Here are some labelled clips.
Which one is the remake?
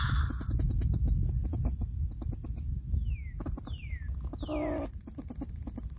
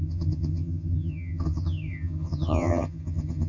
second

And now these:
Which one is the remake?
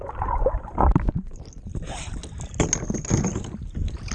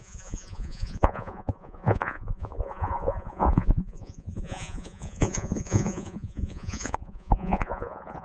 second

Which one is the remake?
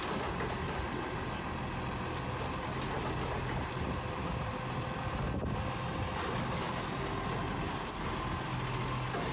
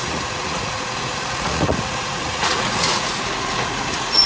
second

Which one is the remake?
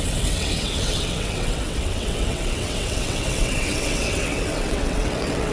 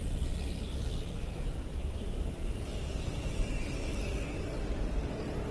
first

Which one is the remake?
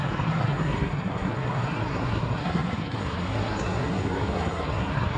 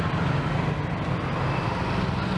first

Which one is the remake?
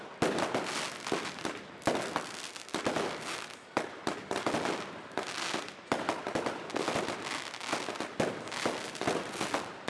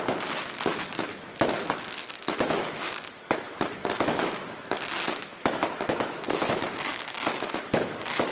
second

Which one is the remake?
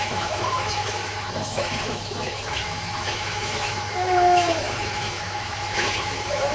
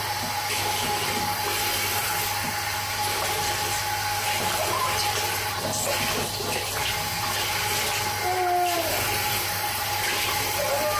first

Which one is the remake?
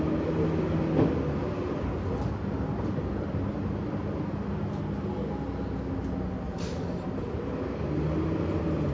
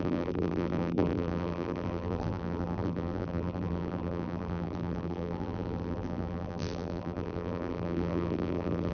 second